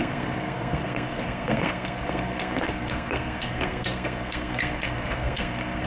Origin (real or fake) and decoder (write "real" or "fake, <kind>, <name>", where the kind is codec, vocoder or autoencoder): fake, codec, SNAC